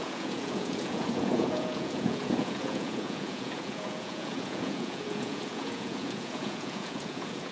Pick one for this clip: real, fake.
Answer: fake